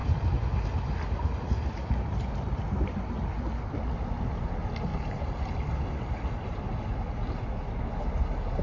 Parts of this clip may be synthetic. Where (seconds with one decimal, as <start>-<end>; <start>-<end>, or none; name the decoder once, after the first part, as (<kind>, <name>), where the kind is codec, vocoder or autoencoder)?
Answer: 4.9-5.5 (vocoder, BigVGAN v2)